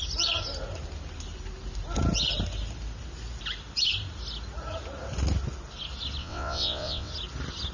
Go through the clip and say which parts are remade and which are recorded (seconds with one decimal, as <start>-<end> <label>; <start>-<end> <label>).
0.0-6.2 recorded; 6.2-7.1 remade; 7.1-7.7 recorded